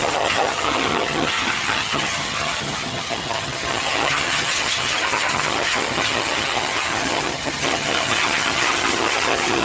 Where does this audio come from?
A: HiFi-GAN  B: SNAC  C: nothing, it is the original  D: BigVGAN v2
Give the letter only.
A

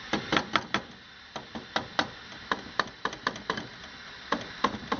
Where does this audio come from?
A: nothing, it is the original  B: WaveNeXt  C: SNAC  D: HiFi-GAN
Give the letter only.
A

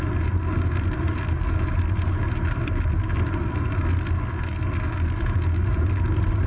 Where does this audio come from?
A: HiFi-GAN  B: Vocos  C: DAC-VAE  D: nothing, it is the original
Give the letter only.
D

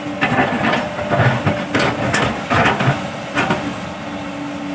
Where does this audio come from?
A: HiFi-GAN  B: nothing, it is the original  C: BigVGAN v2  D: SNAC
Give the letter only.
B